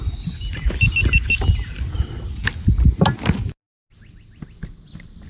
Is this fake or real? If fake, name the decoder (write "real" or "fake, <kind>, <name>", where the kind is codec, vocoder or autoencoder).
real